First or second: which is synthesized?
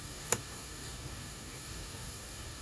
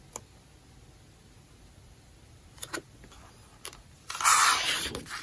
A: first